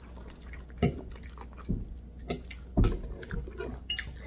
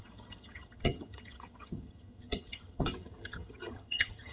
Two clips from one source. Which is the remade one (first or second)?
second